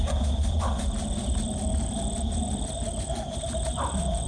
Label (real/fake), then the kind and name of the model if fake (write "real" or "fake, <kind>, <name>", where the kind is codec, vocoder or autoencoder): real